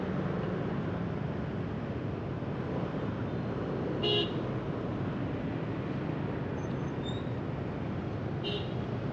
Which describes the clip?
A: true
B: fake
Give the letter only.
A